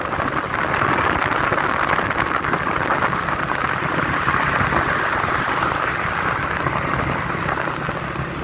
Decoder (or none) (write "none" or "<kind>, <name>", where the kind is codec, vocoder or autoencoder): none